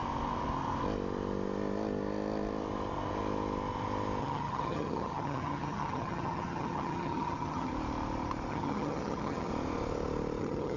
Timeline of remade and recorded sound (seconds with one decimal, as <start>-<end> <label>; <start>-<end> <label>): 0.0-4.2 recorded; 4.2-7.7 remade; 7.7-8.5 recorded; 8.5-9.5 remade; 9.5-10.4 recorded; 10.4-10.8 remade